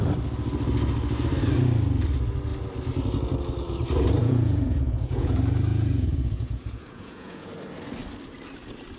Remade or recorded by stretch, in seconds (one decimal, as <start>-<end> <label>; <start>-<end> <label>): 0.0-4.2 recorded; 4.2-5.3 remade; 5.3-5.7 recorded; 5.7-7.5 remade; 7.5-9.0 recorded